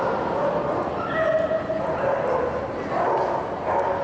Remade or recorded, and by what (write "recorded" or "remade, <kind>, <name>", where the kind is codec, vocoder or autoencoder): recorded